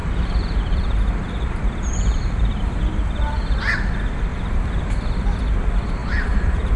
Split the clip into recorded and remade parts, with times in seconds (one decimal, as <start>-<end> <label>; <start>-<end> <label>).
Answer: 0.0-2.6 remade; 2.6-4.3 recorded; 4.3-4.9 remade; 4.9-6.0 recorded; 6.0-6.8 remade

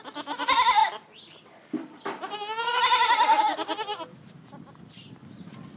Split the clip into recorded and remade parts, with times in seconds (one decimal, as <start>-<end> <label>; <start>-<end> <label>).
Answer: 0.0-0.8 recorded; 0.8-3.4 remade; 3.4-5.8 recorded

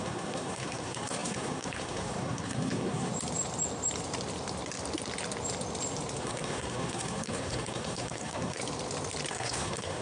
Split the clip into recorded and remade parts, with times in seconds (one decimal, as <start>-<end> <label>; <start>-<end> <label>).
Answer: 0.0-3.1 remade; 3.1-6.2 recorded; 6.2-8.6 remade; 8.6-9.3 recorded; 9.3-10.0 remade

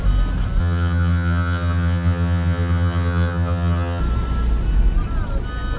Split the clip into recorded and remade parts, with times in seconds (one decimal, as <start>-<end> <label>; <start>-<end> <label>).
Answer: 0.0-0.6 recorded; 0.6-4.0 remade; 4.0-5.8 recorded

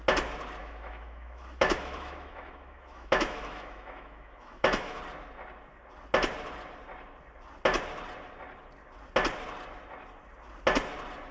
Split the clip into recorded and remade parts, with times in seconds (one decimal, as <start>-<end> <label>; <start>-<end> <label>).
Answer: 0.0-0.6 recorded; 0.6-5.0 remade; 5.0-11.3 recorded